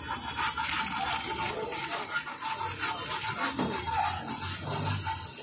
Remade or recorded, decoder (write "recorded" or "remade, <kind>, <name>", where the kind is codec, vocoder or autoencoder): recorded